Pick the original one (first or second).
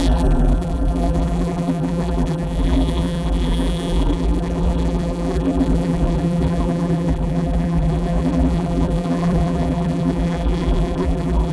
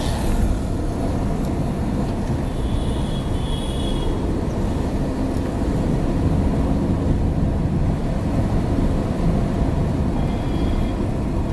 second